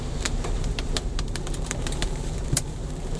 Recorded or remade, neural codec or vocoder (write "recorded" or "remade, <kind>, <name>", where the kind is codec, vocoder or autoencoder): remade, vocoder, BigVGAN v2